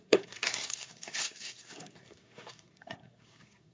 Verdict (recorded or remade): remade